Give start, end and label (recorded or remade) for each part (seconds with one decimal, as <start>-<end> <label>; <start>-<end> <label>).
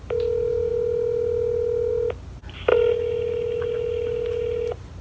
0.0-5.0 recorded